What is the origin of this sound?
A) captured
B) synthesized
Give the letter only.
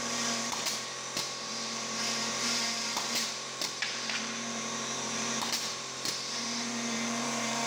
B